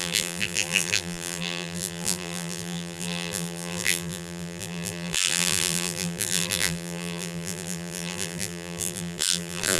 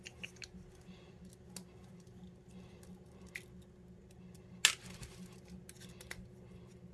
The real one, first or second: second